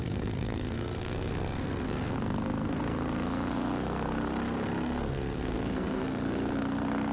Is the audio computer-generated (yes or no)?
yes